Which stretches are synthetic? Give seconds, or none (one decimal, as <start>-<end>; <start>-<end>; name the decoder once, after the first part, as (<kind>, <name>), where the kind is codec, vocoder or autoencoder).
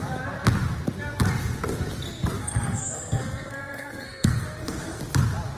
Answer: 2.4-5.0 (codec, SNAC)